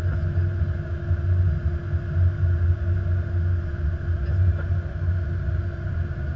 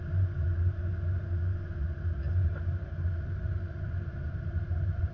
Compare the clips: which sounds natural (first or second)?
first